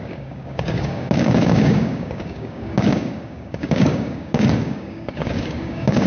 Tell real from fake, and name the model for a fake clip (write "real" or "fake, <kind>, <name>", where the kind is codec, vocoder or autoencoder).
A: fake, codec, DAC